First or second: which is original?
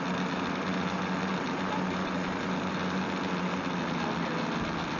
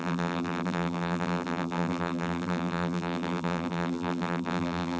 first